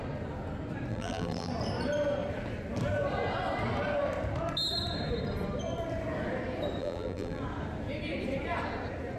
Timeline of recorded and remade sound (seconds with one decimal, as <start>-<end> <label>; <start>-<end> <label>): 0.0-0.9 recorded; 0.9-1.5 remade; 1.5-6.8 recorded; 6.8-7.4 remade; 7.4-9.2 recorded